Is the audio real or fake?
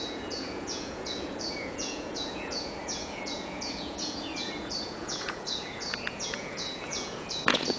fake